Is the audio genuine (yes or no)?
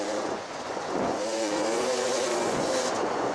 no